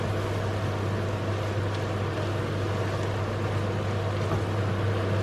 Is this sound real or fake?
real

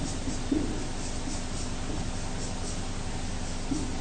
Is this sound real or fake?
real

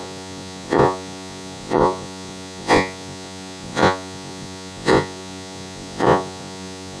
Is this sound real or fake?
fake